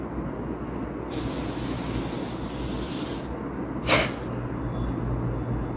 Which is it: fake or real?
real